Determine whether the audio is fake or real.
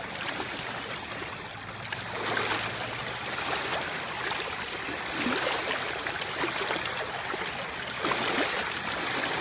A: real